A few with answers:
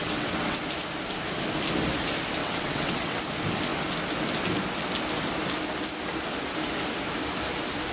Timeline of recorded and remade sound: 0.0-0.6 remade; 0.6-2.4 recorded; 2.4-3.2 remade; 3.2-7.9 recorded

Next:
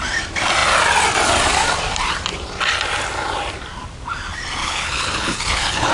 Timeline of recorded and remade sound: 0.0-4.6 recorded; 4.6-5.9 remade

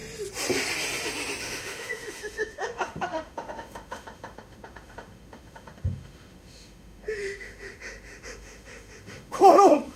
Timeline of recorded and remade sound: 0.0-1.4 recorded; 1.4-10.0 remade

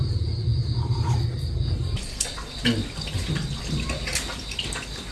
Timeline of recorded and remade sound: 0.0-5.1 recorded

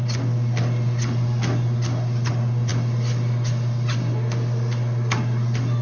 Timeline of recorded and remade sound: 0.0-5.8 recorded

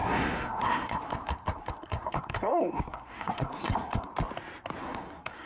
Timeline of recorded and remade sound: 0.0-4.1 remade; 4.1-4.8 recorded; 4.8-5.5 remade